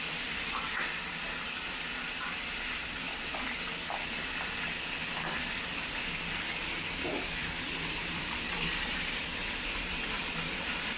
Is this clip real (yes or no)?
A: no